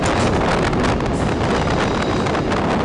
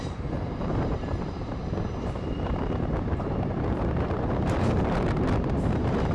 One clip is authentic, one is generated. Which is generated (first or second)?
second